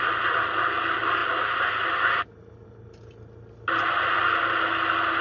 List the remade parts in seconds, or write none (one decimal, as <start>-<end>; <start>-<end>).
none